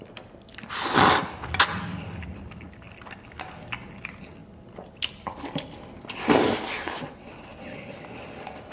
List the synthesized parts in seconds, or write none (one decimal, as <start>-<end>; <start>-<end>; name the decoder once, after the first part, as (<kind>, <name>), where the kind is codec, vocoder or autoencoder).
none